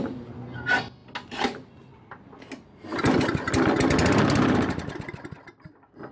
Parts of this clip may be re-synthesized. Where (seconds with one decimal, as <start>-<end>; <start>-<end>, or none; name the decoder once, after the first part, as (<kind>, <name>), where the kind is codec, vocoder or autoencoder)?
none